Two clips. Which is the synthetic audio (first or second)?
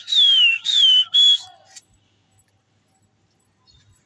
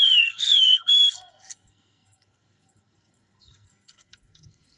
second